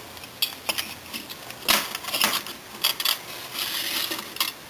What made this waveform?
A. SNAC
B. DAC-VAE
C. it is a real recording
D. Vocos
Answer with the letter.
C